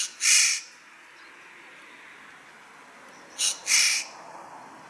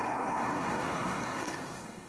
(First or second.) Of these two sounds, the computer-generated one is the second